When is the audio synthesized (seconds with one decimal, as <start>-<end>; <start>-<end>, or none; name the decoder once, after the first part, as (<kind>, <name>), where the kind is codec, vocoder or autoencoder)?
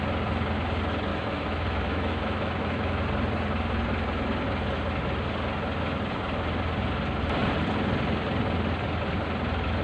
1.1-3.0 (autoencoder, DAC-VAE)